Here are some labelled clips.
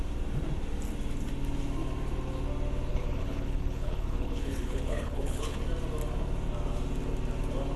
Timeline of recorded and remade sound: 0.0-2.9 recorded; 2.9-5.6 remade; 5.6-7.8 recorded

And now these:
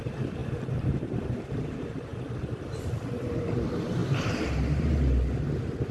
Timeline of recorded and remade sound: 0.0-2.1 remade; 2.1-2.7 recorded; 2.7-4.0 remade; 4.0-5.9 recorded

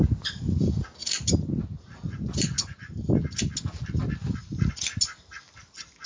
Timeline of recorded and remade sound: 0.0-6.1 recorded